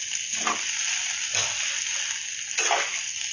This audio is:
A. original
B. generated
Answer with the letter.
A